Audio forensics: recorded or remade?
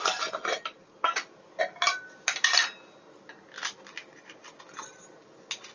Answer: recorded